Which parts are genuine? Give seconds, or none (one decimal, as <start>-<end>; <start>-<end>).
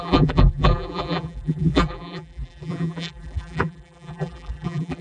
none